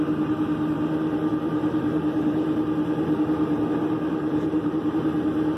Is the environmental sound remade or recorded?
remade